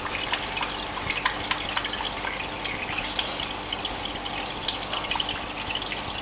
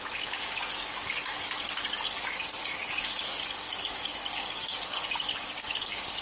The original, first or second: first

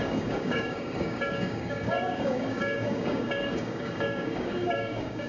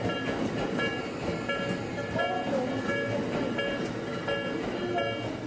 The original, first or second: second